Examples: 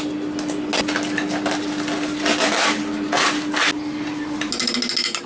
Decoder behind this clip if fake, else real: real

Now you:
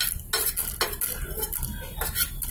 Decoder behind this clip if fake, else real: real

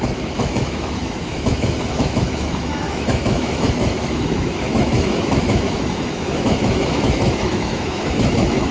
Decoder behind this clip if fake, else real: fake, autoencoder, DAC-VAE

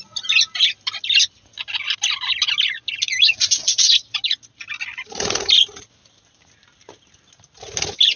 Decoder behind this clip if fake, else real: real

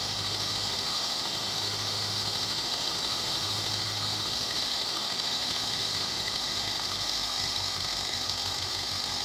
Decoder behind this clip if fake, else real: fake, autoencoder, DAC-VAE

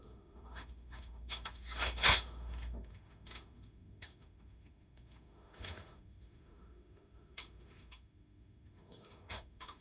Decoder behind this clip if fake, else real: fake, autoencoder, DAC-VAE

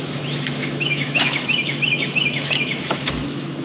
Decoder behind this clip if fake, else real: fake, autoencoder, DAC-VAE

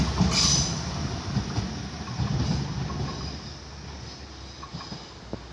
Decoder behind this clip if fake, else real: real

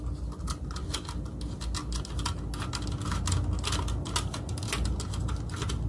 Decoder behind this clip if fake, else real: real